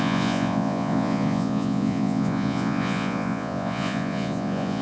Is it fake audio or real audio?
fake